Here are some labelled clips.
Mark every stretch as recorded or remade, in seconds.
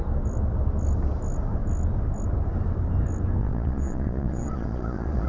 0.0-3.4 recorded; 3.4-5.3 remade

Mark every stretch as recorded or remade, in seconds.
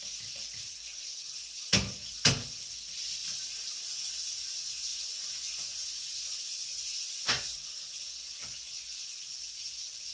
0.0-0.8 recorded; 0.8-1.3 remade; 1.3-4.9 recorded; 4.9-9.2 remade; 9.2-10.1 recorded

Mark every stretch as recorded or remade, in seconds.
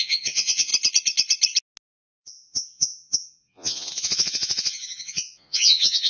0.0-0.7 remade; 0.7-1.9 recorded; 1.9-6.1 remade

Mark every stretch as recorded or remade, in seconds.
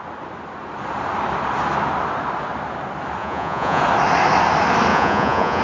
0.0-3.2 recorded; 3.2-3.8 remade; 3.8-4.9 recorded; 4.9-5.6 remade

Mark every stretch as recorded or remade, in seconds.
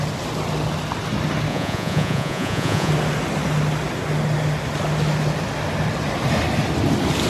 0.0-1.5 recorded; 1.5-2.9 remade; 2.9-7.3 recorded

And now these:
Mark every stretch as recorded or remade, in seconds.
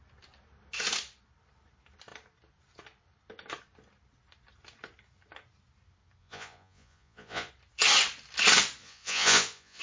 0.0-6.2 recorded; 6.2-7.5 remade; 7.5-8.8 recorded; 8.8-9.8 remade